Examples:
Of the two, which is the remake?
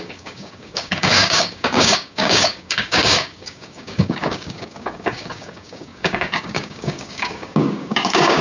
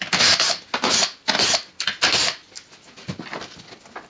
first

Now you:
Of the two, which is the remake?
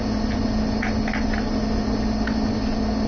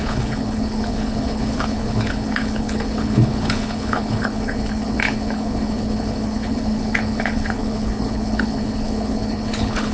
second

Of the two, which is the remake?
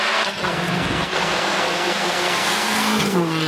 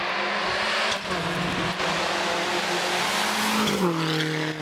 first